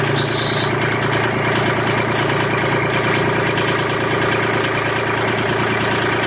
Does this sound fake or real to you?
real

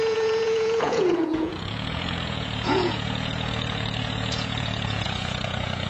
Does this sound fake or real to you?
fake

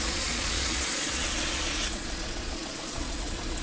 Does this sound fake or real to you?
fake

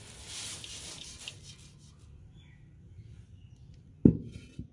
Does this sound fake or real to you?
real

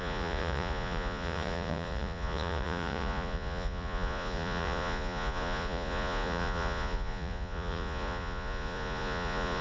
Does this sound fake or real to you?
fake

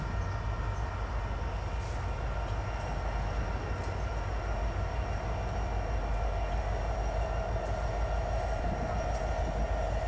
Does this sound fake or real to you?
real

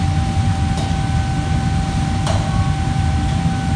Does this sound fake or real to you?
real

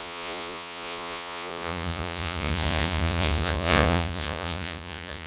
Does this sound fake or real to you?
fake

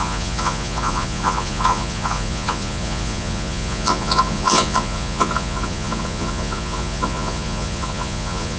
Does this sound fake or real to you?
fake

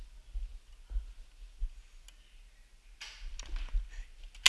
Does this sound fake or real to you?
real